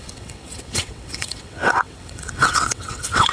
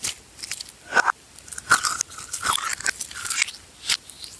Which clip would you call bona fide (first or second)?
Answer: second